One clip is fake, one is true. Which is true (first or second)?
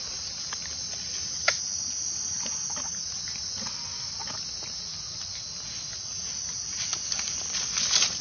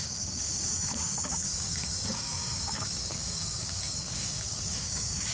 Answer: first